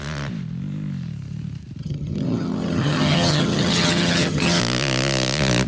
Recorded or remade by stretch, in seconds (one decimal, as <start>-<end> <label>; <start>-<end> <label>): 0.0-1.8 recorded; 1.8-4.6 remade; 4.6-5.7 recorded